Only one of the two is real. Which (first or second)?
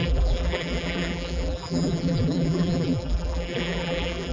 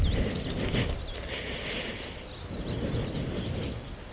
second